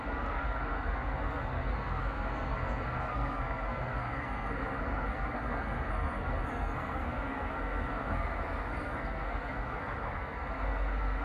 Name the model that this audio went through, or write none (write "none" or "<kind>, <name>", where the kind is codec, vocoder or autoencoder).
codec, SNAC